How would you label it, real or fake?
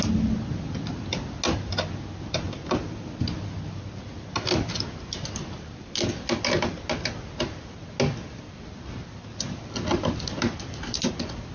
real